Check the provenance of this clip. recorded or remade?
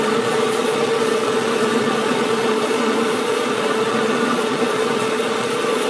remade